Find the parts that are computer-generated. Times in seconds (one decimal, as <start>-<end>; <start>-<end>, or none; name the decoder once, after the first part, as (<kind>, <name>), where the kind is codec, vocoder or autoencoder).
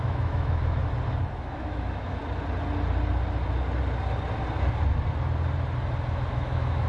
0.0-0.8 (autoencoder, DAC-VAE); 1.3-2.2; 6.3-6.9